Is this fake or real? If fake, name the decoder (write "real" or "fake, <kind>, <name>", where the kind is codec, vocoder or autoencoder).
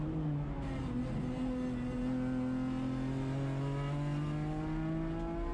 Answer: real